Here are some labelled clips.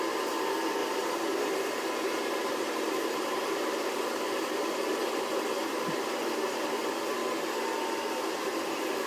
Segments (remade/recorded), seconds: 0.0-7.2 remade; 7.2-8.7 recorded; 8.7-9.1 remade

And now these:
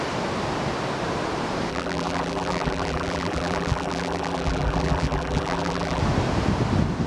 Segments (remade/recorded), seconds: 0.0-1.7 recorded; 1.7-6.0 remade; 6.0-7.1 recorded

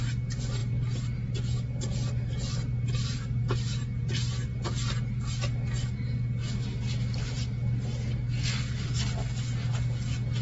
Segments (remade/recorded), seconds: 0.0-10.4 recorded

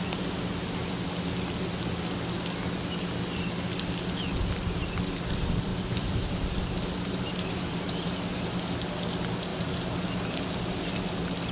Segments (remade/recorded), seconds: 0.0-5.7 recorded; 5.7-8.6 remade; 8.6-9.5 recorded; 9.5-10.5 remade; 10.5-11.5 recorded